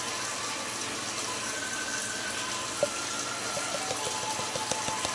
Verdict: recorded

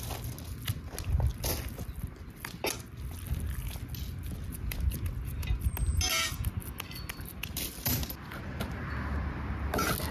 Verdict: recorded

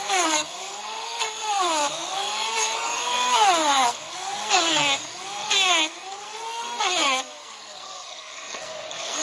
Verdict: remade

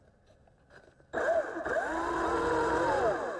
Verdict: recorded